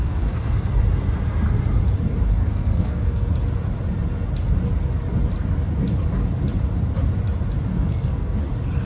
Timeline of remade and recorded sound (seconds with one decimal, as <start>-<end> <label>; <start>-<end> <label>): 0.0-0.7 remade; 0.7-2.4 recorded; 2.4-3.3 remade; 3.3-7.7 recorded; 7.7-8.4 remade; 8.4-8.8 recorded